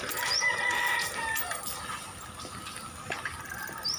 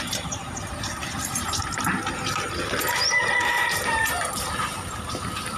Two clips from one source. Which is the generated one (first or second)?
second